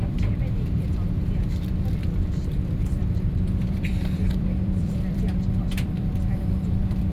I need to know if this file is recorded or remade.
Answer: remade